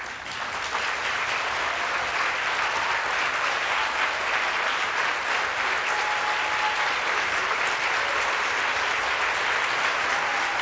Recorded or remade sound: recorded